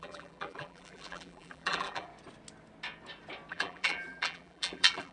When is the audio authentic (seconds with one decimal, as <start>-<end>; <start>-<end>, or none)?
2.1-3.5

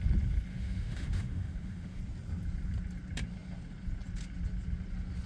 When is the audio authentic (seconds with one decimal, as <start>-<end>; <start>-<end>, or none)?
0.0-0.5; 2.0-5.3

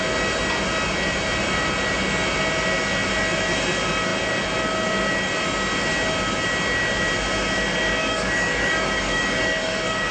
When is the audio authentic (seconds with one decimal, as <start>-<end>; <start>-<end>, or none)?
0.0-8.0

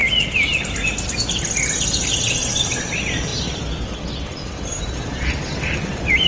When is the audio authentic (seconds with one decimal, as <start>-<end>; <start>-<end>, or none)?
0.0-4.4